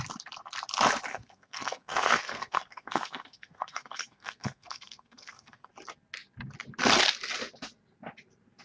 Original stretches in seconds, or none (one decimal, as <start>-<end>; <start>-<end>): 0.0-1.1; 5.7-8.6